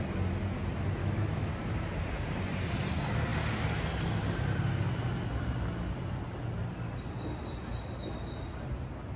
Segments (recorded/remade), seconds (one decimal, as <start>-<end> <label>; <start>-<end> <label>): 0.0-1.0 recorded; 1.0-1.5 remade; 1.5-9.2 recorded